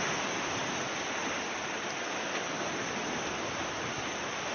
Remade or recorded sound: recorded